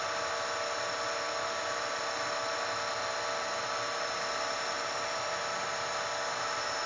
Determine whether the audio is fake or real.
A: real